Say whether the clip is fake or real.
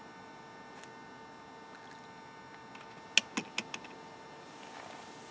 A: real